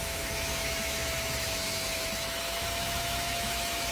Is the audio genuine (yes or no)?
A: no